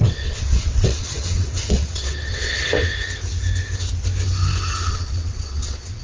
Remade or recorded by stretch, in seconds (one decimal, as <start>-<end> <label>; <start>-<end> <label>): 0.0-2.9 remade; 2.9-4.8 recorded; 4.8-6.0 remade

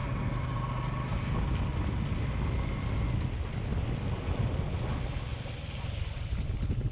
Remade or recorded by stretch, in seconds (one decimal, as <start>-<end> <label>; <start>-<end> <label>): 0.0-6.9 recorded

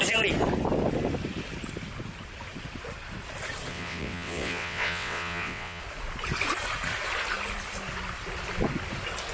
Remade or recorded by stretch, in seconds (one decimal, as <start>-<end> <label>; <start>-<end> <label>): 0.0-3.7 recorded; 3.7-5.8 remade; 5.8-9.3 recorded

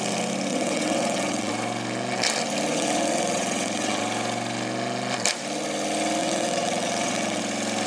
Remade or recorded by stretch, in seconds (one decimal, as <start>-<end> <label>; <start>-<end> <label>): 0.0-0.5 recorded; 0.5-1.5 remade; 1.5-2.7 recorded; 2.7-4.0 remade; 4.0-6.2 recorded; 6.2-7.4 remade; 7.4-7.9 recorded